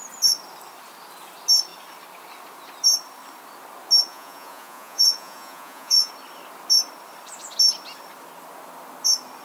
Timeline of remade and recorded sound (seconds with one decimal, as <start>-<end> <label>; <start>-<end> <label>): 0.0-4.1 recorded; 4.1-6.1 remade; 6.1-9.4 recorded